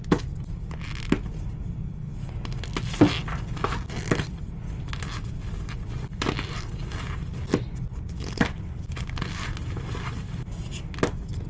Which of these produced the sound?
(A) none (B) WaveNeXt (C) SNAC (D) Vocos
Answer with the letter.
A